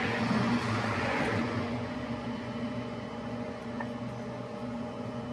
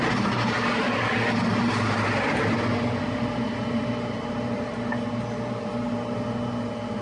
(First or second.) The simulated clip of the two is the first